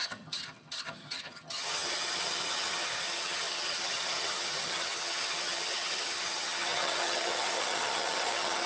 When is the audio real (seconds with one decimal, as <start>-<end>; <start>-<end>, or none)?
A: none